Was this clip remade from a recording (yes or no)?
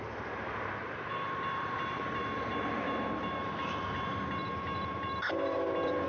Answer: yes